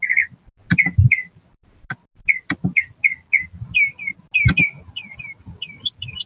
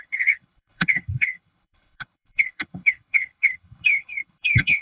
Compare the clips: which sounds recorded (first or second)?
first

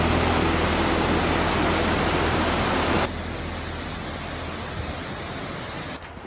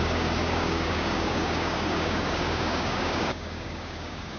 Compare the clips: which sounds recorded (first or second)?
first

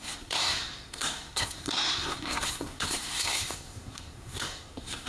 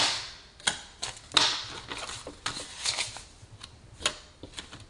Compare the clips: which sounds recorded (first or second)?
second